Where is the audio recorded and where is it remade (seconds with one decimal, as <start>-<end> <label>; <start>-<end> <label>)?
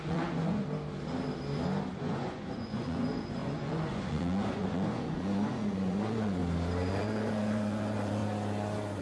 0.0-0.6 remade; 0.6-2.0 recorded; 2.0-6.4 remade; 6.4-6.9 recorded; 6.9-8.2 remade; 8.2-9.0 recorded